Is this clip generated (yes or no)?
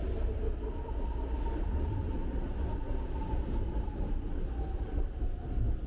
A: no